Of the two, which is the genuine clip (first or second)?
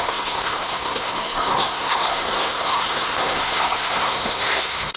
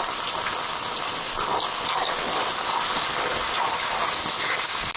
second